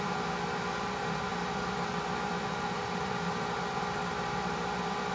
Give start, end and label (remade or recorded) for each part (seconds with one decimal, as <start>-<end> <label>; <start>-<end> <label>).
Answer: 0.0-1.3 recorded; 1.3-4.1 remade; 4.1-5.1 recorded